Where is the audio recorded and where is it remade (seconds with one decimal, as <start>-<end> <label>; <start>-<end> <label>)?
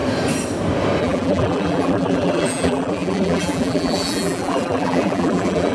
0.0-1.0 recorded; 1.0-5.7 remade